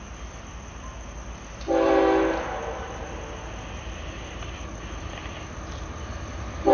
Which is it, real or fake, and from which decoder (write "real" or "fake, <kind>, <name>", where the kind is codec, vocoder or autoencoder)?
real